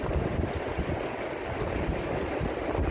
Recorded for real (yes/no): yes